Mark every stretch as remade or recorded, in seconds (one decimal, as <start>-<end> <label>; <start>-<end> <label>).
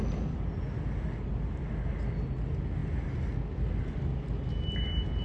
0.0-5.2 recorded